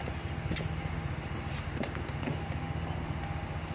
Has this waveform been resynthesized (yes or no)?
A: no